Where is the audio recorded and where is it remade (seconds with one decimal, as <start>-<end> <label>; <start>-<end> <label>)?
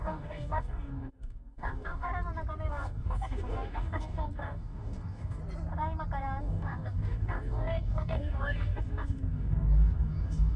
0.0-2.1 remade; 2.1-2.7 recorded; 2.7-5.4 remade; 5.4-6.4 recorded; 6.4-10.6 remade